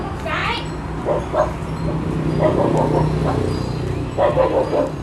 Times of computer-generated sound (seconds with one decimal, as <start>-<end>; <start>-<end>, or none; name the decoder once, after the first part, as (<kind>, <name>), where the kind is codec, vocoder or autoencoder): none